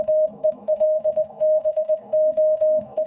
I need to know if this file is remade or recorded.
remade